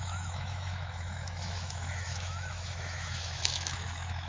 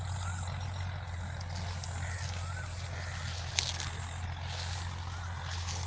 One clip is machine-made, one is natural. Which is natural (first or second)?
second